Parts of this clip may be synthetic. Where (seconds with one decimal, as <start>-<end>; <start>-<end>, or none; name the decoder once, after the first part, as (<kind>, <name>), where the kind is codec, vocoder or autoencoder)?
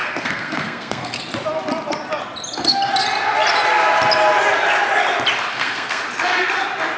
0.0-1.2 (codec, SNAC); 5.5-6.0